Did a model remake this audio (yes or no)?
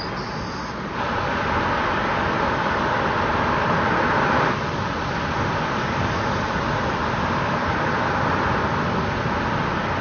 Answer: no